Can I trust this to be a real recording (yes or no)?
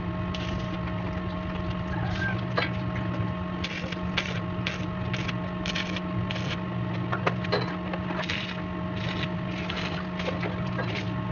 yes